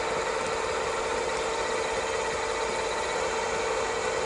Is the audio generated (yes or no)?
no